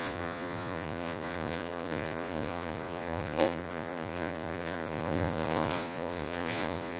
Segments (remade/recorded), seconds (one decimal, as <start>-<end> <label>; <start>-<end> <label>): 0.0-7.0 remade